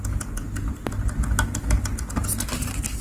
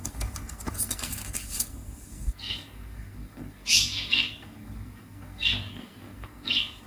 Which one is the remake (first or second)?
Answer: second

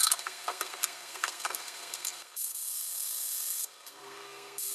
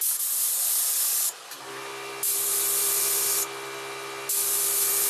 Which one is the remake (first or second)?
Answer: first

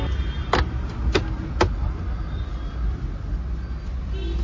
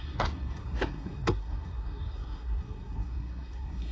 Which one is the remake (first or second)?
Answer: second